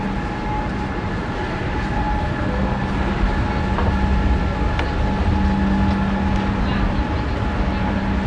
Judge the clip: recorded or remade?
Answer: recorded